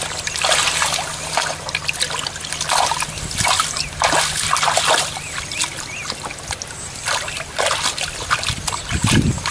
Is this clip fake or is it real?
real